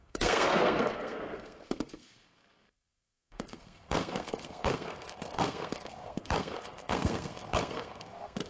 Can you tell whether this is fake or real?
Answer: fake